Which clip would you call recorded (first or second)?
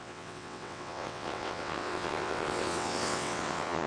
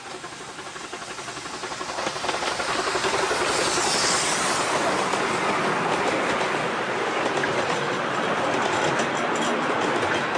second